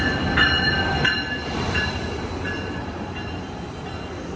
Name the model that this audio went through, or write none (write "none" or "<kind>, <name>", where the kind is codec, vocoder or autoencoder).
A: none